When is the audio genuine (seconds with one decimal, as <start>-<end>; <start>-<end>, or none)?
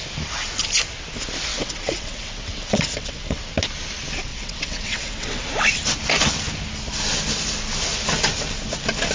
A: 0.0-1.5; 3.4-4.3; 5.4-9.1